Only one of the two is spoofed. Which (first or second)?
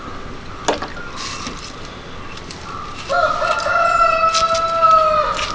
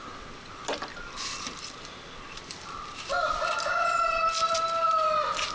second